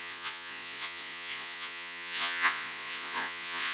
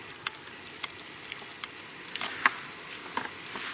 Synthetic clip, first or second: first